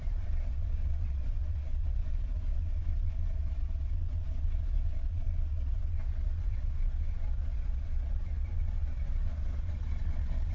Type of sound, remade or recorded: remade